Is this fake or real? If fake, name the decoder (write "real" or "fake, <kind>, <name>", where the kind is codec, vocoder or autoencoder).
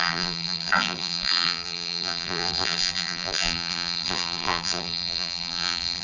fake, vocoder, BigVGAN v2